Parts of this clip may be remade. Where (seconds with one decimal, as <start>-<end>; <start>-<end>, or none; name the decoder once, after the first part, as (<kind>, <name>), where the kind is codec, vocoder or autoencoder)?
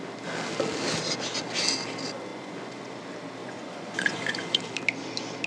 2.3-3.0 (vocoder, Vocos); 3.4-4.6